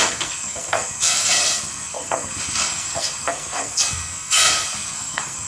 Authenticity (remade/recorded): remade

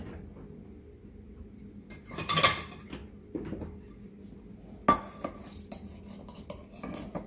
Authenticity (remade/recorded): recorded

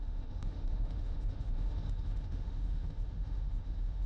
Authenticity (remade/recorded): remade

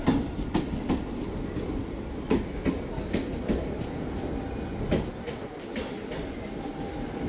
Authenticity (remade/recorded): recorded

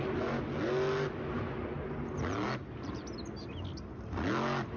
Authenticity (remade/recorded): recorded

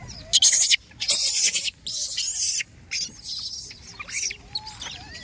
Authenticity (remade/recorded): recorded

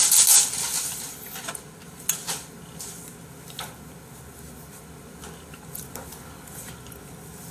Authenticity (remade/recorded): recorded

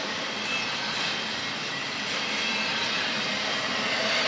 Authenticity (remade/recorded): remade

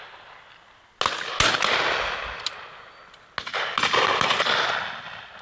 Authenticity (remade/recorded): recorded